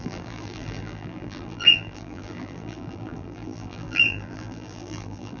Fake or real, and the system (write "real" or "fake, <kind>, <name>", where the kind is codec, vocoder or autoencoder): fake, vocoder, BigVGAN v2